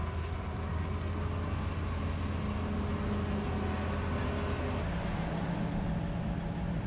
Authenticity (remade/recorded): recorded